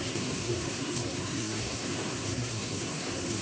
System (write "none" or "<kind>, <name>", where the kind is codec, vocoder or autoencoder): codec, SNAC